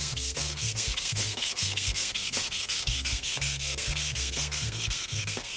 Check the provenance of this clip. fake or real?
fake